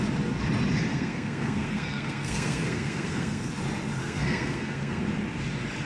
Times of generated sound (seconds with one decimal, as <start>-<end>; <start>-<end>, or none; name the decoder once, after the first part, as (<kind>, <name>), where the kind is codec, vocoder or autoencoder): 0.9-3.5 (codec, SNAC); 4.0-5.0